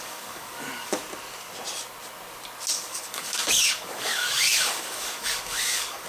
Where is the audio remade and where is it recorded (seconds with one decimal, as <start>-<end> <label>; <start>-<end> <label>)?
0.0-1.0 remade; 1.0-2.7 recorded; 2.7-6.1 remade